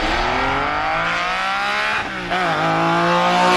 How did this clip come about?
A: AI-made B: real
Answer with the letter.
B